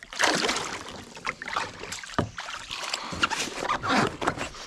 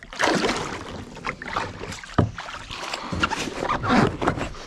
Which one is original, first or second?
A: second